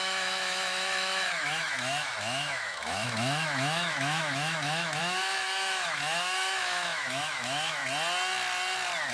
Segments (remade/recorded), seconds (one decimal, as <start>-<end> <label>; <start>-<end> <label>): 0.0-7.8 remade; 7.8-9.1 recorded